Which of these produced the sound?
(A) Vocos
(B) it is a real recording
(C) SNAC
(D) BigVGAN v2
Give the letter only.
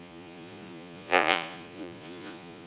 A